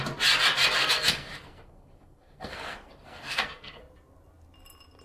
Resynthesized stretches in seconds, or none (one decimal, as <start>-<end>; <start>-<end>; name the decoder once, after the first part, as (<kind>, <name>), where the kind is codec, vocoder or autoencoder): 0.8-3.8 (codec, SNAC)